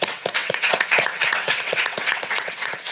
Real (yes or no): no